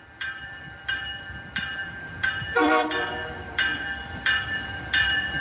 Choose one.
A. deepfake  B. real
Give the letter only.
A